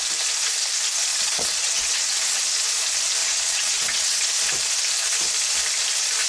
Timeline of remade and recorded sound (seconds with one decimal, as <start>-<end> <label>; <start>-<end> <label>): 0.0-1.1 recorded; 1.1-2.4 remade; 2.4-3.2 recorded; 3.2-4.2 remade; 4.2-6.3 recorded